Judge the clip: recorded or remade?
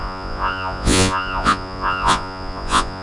remade